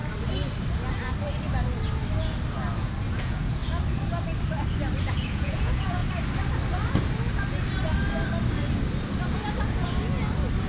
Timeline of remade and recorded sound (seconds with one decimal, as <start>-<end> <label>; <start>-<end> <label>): 0.0-3.2 recorded; 3.2-3.6 remade; 3.6-5.0 recorded; 5.0-6.0 remade; 6.0-10.7 recorded